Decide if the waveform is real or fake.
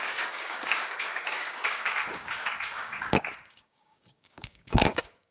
fake